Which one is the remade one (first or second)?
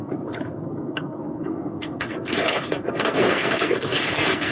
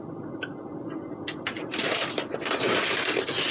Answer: first